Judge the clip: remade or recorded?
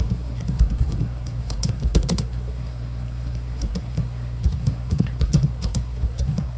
remade